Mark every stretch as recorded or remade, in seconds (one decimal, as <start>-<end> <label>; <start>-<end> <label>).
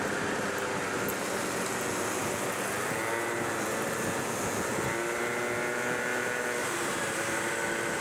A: 0.0-6.6 recorded; 6.6-7.5 remade; 7.5-8.0 recorded